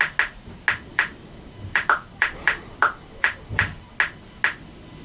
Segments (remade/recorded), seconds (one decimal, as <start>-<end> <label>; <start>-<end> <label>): 0.0-0.9 recorded; 0.9-3.9 remade; 3.9-5.0 recorded